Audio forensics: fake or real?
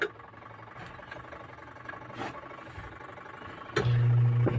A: real